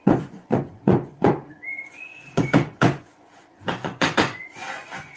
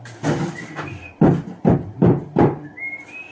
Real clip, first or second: second